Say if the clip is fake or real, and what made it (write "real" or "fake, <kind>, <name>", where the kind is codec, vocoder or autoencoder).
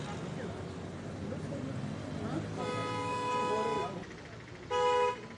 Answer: real